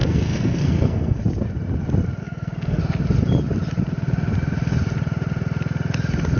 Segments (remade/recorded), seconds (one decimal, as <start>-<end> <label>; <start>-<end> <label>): 0.0-1.2 remade; 1.2-2.2 recorded; 2.2-2.8 remade; 2.8-6.4 recorded